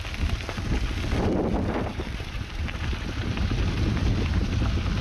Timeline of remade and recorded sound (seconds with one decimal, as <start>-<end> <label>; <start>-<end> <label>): 0.0-1.9 recorded; 1.9-4.6 remade; 4.6-5.0 recorded